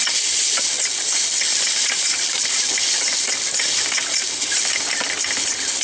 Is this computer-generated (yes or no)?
no